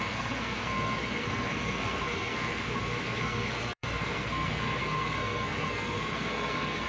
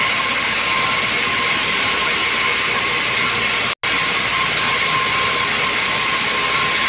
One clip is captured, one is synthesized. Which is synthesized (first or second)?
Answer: first